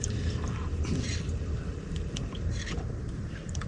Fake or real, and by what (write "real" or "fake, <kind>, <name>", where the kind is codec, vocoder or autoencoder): fake, vocoder, BigVGAN v2